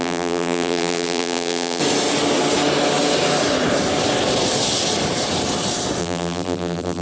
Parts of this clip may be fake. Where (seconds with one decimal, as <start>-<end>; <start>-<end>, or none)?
0.0-1.8; 6.0-7.0